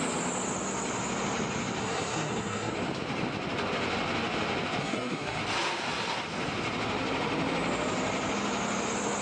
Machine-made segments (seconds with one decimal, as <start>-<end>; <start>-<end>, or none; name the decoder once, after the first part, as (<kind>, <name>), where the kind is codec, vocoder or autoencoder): 1.8-2.7 (codec, SNAC); 4.8-5.4